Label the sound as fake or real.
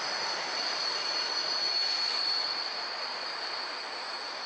real